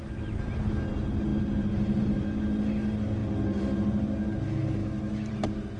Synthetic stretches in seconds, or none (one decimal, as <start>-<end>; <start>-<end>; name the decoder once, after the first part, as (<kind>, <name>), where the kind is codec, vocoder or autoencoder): 4.8-5.3 (autoencoder, DAC-VAE)